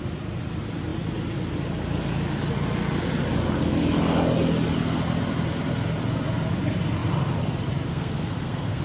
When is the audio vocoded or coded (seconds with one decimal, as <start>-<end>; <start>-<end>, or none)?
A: 7.9-8.8